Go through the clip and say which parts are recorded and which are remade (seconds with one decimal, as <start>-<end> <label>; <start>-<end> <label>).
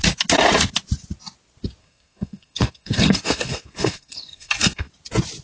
0.0-1.8 recorded; 1.8-4.9 remade; 4.9-5.4 recorded